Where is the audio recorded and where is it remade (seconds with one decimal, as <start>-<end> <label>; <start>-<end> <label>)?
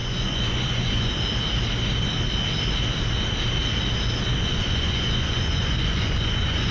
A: 0.0-1.2 remade; 1.2-4.5 recorded; 4.5-6.7 remade